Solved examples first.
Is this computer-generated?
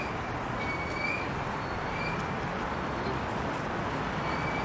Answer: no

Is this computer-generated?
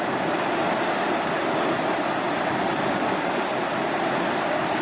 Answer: no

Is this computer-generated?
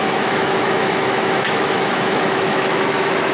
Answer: yes